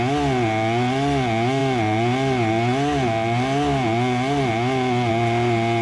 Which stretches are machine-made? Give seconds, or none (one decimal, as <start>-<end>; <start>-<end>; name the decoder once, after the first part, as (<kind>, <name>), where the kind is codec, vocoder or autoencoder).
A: none